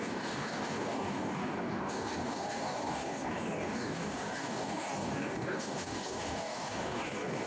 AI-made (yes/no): yes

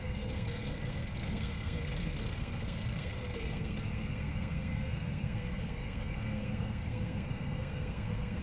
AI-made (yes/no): yes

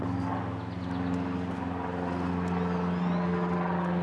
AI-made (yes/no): no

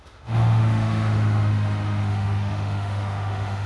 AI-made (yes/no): yes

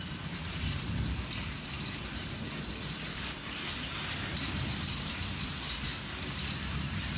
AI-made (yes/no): yes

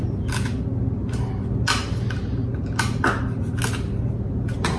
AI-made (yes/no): no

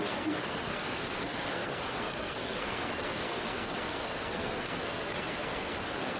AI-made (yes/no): yes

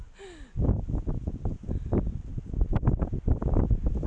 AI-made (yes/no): no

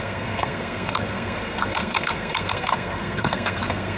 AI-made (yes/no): yes